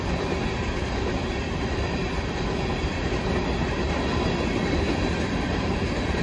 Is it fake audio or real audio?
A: real